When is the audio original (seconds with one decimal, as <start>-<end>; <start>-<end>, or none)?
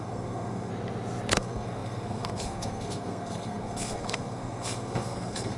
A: 0.7-1.3